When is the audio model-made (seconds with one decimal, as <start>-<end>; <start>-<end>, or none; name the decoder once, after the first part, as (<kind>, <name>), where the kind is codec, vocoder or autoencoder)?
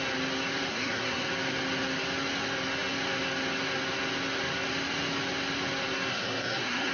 0.7-1.3 (codec, SNAC); 6.1-6.9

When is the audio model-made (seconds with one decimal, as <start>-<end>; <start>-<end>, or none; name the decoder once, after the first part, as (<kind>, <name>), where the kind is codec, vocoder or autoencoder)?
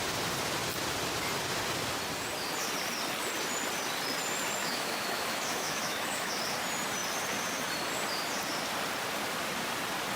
4.6-6.3 (autoencoder, DAC-VAE)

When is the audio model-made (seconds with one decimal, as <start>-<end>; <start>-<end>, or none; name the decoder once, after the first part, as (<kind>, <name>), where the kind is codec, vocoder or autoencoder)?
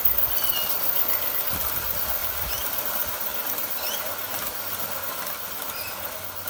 none